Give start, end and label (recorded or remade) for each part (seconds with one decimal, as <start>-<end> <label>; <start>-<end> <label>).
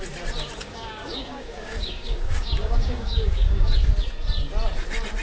0.0-0.6 recorded; 0.6-3.7 remade; 3.7-5.2 recorded